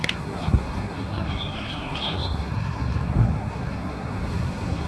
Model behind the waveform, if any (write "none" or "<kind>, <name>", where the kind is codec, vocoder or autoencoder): codec, SNAC